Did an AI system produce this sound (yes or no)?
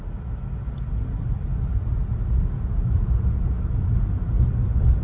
no